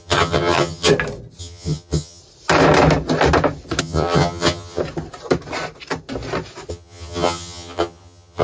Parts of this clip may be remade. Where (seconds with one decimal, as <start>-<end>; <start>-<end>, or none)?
0.0-0.9; 1.4-2.2; 3.8-4.8; 6.7-8.4